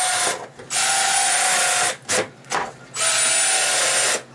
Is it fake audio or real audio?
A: real